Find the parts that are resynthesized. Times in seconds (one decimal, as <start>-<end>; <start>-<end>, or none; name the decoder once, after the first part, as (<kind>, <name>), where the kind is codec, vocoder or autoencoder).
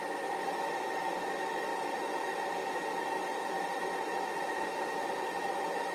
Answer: none